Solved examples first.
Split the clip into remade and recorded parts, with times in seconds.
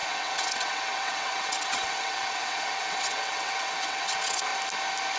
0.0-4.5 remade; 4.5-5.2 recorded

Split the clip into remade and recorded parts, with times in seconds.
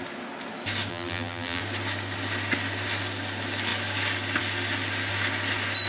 0.0-0.9 recorded; 0.9-1.6 remade; 1.6-5.9 recorded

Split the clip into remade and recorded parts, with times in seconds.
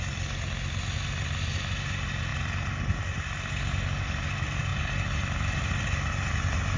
0.0-6.8 recorded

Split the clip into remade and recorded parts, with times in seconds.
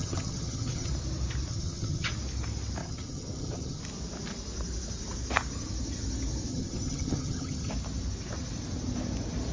0.0-0.9 remade; 0.9-1.5 recorded; 1.5-2.1 remade; 2.1-2.8 recorded; 2.8-3.8 remade; 3.8-6.5 recorded; 6.5-7.7 remade; 7.7-9.5 recorded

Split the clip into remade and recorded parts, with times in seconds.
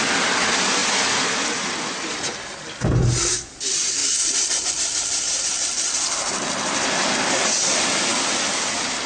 0.0-4.0 recorded; 4.0-4.7 remade; 4.7-8.1 recorded; 8.1-9.1 remade